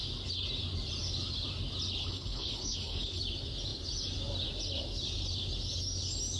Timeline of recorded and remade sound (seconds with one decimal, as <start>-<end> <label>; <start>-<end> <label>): 0.0-2.0 recorded; 2.0-3.2 remade; 3.2-6.4 recorded